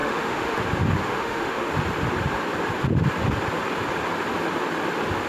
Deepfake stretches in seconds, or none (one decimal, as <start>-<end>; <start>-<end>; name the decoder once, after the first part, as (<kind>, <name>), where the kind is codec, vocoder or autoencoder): 0.0-0.6 (autoencoder, DAC-VAE); 1.0-1.7

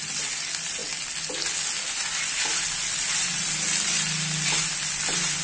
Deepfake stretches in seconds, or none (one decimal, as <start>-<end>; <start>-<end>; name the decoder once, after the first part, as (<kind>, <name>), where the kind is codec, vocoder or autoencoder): none

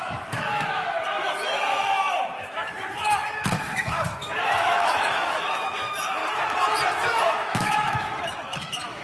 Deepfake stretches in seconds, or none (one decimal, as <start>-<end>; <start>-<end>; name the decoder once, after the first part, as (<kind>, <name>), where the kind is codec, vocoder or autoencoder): 0.0-6.2 (autoencoder, DAC-VAE); 7.2-9.0

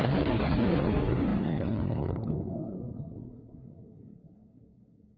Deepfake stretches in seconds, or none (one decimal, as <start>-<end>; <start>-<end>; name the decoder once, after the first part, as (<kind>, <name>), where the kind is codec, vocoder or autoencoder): 0.0-5.2 (codec, SNAC)

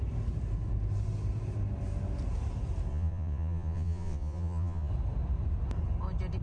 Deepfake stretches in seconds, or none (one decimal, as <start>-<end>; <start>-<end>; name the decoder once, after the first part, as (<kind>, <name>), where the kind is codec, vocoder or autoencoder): 2.9-4.9 (vocoder, Vocos)

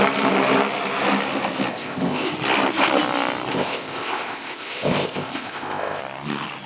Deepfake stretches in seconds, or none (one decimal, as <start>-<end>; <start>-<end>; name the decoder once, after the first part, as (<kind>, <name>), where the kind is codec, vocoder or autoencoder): 1.7-2.3 (codec, ZipCodec); 3.5-6.0

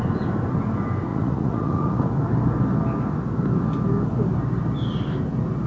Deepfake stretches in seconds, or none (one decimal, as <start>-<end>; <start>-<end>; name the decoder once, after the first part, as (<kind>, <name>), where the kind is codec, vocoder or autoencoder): 1.1-2.0 (vocoder, Vocos)

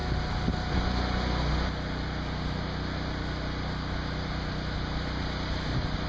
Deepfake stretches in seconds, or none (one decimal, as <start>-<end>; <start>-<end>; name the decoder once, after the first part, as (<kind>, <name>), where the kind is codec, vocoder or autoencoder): none